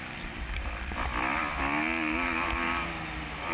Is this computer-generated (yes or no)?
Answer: no